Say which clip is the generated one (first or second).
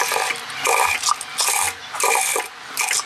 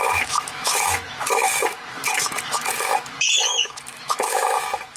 second